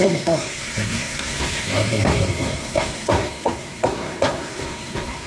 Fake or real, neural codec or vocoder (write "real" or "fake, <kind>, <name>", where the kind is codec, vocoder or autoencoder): fake, codec, SNAC